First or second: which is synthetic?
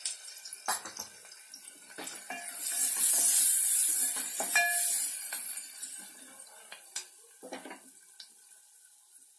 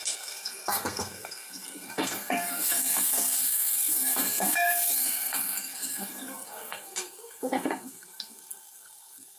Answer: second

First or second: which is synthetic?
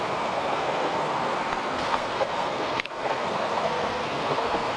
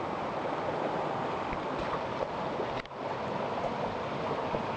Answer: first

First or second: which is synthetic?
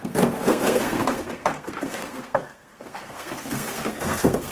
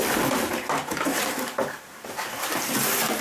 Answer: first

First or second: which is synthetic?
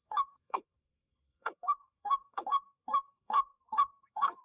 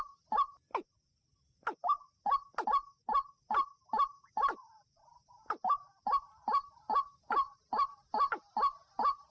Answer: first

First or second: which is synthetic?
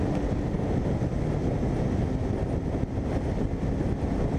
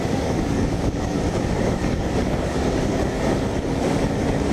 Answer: second